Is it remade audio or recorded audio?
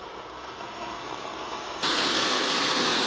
remade